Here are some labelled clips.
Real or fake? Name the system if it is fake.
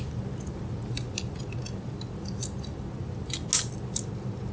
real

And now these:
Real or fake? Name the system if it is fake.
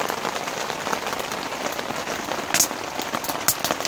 real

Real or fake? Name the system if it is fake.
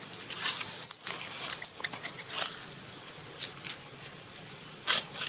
real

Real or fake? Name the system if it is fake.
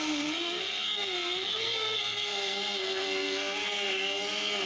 fake, codec, SNAC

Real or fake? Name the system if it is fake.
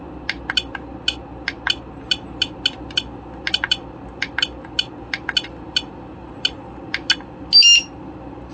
real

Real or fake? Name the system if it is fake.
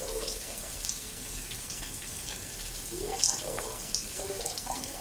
fake, codec, SNAC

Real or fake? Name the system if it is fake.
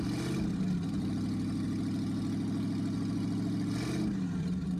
real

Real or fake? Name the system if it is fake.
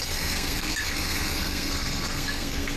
fake, codec, SNAC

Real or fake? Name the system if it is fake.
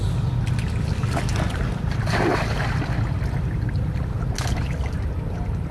real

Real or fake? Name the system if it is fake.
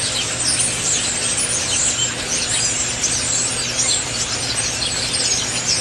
real